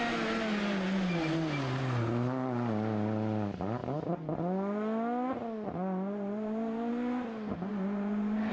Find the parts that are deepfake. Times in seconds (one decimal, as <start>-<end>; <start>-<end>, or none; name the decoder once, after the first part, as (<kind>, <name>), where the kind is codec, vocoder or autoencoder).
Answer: none